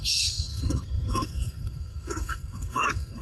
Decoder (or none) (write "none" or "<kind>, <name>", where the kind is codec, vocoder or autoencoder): codec, SNAC